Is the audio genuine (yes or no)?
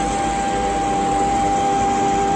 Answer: yes